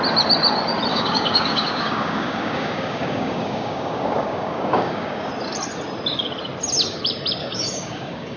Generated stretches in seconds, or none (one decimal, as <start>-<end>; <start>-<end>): 0.9-5.3; 7.4-8.4